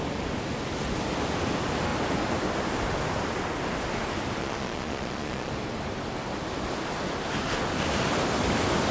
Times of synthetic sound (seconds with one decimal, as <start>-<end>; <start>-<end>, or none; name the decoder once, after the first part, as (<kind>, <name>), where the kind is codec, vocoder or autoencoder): 4.4-5.5 (vocoder, Vocos)